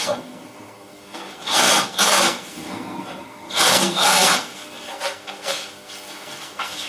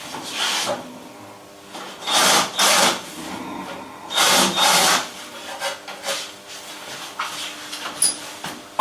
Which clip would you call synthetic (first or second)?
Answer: first